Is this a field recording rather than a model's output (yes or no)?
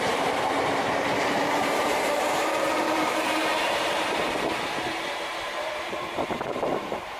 no